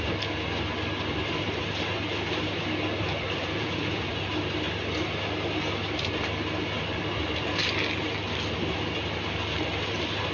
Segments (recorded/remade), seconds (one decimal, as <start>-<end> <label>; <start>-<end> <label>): 0.0-3.4 recorded; 3.4-4.1 remade; 4.1-10.3 recorded